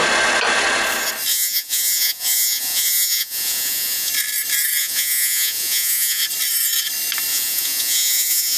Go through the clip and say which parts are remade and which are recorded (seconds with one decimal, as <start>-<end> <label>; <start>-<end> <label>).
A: 0.0-1.3 recorded; 1.3-4.1 remade; 4.1-4.8 recorded; 4.8-6.2 remade; 6.2-7.3 recorded; 7.3-8.6 remade